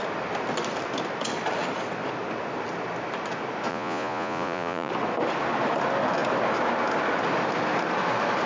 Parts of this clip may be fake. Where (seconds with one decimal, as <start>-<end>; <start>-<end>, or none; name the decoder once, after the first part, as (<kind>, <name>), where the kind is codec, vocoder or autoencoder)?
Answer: 3.7-4.9 (vocoder, Vocos)